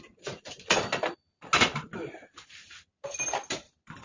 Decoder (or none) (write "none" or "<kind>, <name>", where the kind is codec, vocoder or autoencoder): none